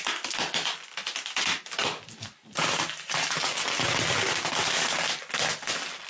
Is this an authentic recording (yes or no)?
yes